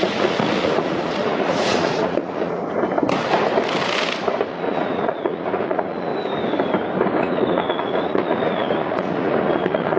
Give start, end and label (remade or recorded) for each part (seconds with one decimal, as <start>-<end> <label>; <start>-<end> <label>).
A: 0.0-2.6 remade; 2.6-4.5 recorded; 4.5-6.1 remade; 6.1-7.2 recorded; 7.2-10.0 remade